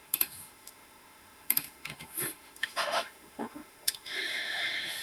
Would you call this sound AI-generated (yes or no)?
yes